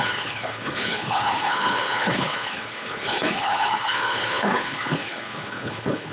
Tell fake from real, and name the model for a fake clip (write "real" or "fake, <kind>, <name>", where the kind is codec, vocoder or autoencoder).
fake, codec, HILCodec